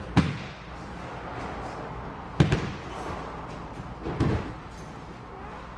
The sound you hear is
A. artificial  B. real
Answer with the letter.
B